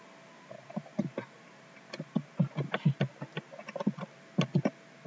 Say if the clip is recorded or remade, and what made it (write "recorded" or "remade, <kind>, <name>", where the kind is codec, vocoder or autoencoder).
recorded